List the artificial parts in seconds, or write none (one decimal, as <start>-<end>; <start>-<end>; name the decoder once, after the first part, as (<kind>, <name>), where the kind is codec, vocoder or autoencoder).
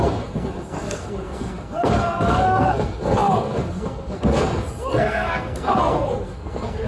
0.0-6.9 (codec, SNAC)